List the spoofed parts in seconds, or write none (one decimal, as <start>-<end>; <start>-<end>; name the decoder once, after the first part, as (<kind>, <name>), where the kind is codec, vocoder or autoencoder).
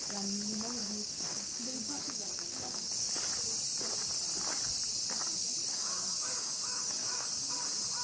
0.8-3.1 (codec, DAC); 5.6-7.5